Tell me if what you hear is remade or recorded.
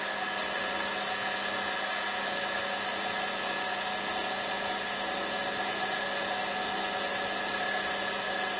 recorded